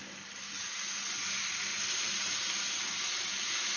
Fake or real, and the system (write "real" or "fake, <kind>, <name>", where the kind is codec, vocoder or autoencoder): real